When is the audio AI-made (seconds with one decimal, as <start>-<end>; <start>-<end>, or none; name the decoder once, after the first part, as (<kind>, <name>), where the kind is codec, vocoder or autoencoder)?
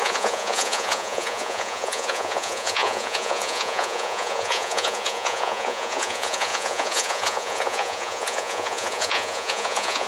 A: 0.0-10.1 (vocoder, Vocos)